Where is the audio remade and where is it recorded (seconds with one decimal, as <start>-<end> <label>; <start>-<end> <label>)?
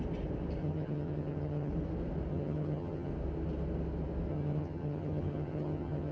0.0-0.6 recorded; 0.6-1.7 remade; 1.7-2.3 recorded; 2.3-3.1 remade; 3.1-4.3 recorded; 4.3-6.1 remade